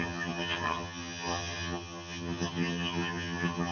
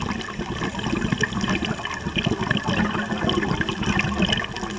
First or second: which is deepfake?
first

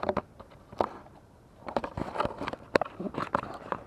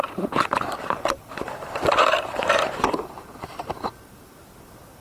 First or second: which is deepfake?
second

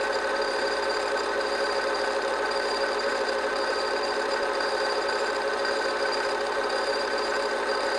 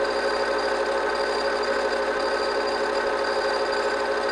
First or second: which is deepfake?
first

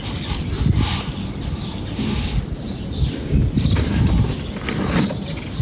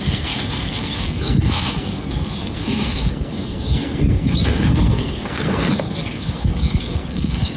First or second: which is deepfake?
second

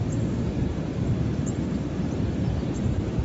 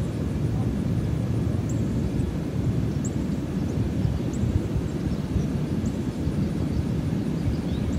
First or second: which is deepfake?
first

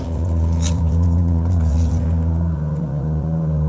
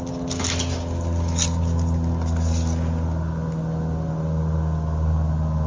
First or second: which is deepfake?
first